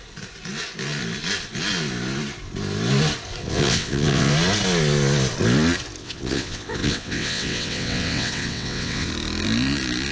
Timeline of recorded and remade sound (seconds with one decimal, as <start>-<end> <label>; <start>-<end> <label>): 0.0-3.4 recorded; 3.4-4.3 remade; 4.3-6.0 recorded; 6.0-9.1 remade; 9.1-10.1 recorded